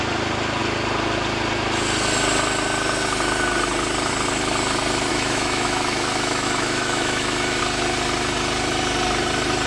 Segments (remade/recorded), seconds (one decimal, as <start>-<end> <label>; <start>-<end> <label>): 0.0-5.1 recorded; 5.1-7.6 remade; 7.6-9.7 recorded